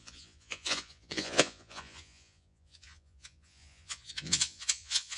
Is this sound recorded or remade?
remade